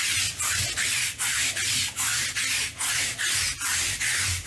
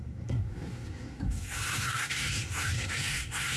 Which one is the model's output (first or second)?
second